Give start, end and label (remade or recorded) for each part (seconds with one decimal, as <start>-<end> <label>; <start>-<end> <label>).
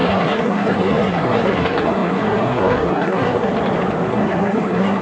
0.0-3.5 remade; 3.5-4.1 recorded; 4.1-5.0 remade